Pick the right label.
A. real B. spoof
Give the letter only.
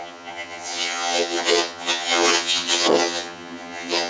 B